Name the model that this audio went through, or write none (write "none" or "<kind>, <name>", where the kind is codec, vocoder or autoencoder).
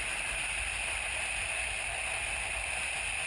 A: none